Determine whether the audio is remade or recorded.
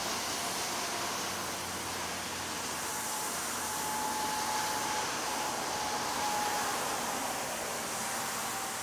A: recorded